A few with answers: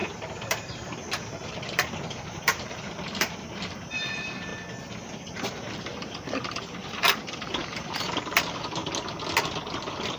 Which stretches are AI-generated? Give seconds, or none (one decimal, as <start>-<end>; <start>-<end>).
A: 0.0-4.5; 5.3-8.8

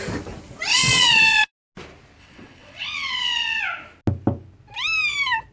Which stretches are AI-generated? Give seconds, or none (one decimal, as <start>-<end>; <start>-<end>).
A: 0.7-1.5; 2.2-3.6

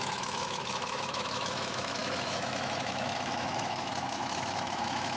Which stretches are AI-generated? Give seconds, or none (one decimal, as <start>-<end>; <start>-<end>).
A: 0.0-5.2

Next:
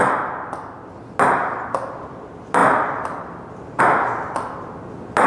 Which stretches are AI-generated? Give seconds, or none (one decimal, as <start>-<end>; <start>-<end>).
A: none

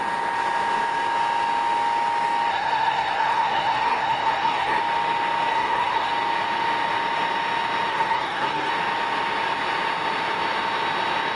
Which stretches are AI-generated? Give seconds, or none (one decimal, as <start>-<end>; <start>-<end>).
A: 2.5-4.8; 5.5-6.1; 7.9-8.7

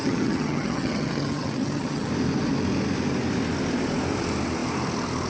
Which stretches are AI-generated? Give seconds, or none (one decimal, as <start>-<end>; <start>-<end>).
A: 0.0-2.1